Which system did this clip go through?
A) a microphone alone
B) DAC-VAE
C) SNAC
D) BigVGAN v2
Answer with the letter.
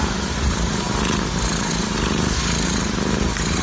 D